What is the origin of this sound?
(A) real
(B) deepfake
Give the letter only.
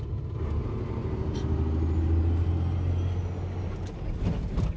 A